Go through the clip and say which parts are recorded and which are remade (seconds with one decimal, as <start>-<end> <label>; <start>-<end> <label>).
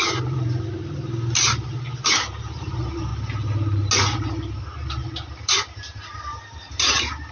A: 0.0-3.1 remade; 3.1-5.4 recorded; 5.4-7.3 remade